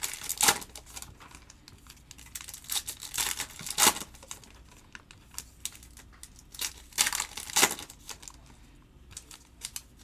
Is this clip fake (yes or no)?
no